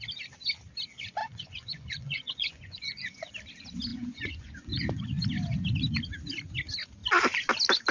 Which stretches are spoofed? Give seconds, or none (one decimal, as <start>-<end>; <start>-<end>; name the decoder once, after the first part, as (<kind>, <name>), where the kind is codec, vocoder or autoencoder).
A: 1.2-3.3 (vocoder, Vocos); 3.9-5.0